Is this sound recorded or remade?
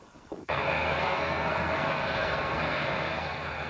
remade